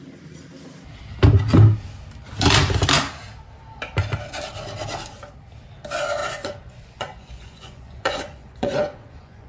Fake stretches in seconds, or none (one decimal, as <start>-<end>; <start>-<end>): 6.2-9.5